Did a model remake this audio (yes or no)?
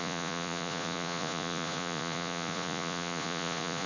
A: yes